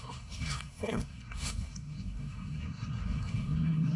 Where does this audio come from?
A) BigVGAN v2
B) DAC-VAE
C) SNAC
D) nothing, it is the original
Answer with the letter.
C